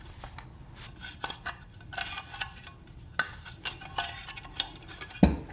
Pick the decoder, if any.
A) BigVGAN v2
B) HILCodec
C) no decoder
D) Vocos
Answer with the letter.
C